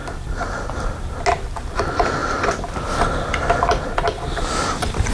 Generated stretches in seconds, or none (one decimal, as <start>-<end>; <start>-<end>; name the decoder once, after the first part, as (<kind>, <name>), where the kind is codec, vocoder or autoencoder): none